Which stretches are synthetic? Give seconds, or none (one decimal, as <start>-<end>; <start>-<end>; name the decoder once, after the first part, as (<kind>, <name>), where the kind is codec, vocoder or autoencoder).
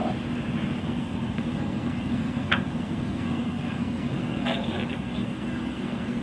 0.8-6.2 (codec, SNAC)